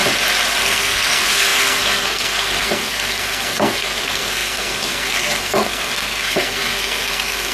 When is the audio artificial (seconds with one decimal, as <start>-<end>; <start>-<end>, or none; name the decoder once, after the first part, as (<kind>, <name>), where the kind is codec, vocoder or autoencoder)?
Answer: 0.6-7.5 (codec, SNAC)